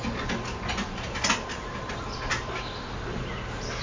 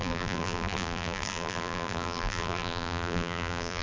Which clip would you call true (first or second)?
first